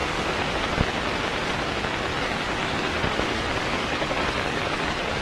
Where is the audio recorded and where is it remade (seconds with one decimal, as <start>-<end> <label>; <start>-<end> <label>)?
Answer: 0.0-0.8 remade; 0.8-2.1 recorded; 2.1-5.2 remade